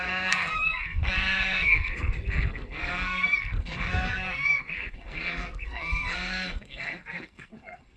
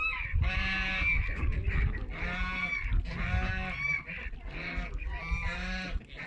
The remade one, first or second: first